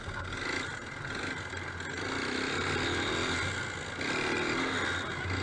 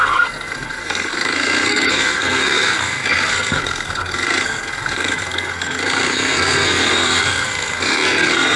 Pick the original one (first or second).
first